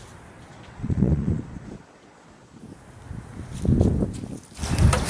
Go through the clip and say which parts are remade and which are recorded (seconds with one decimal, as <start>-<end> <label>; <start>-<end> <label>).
0.0-0.5 recorded; 0.5-2.6 remade; 2.6-5.1 recorded